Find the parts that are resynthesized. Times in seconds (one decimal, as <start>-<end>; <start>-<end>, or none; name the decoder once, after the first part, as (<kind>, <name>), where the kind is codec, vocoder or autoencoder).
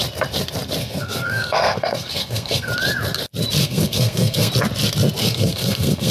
0.8-2.7 (codec, SNAC); 3.6-4.5; 5.2-6.1